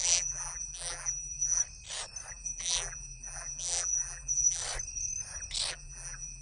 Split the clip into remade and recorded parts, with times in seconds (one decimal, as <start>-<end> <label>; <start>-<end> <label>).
0.0-1.6 remade; 1.6-2.3 recorded; 2.3-4.6 remade; 4.6-5.7 recorded; 5.7-6.4 remade